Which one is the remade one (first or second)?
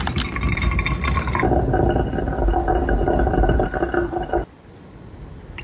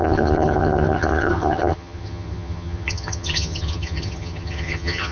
second